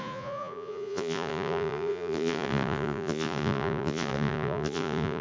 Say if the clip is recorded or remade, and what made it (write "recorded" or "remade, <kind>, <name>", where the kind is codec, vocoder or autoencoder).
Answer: remade, vocoder, Vocos